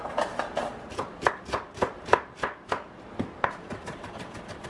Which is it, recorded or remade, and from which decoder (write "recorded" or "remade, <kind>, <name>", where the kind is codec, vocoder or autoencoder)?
remade, vocoder, BigVGAN v2